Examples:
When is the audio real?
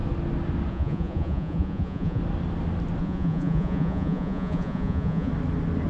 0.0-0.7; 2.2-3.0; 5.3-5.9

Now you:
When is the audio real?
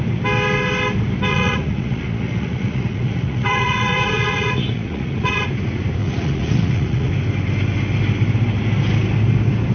0.0-1.3; 5.4-6.0; 7.1-9.7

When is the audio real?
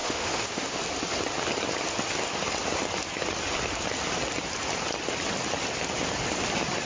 0.8-6.9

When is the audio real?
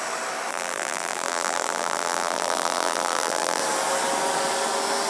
0.0-0.5; 3.6-5.1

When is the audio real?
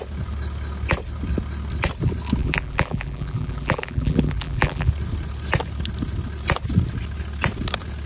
0.0-2.4; 4.9-8.1